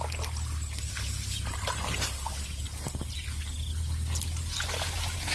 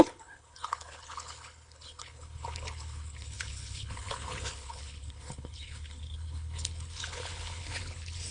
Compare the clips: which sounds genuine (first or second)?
first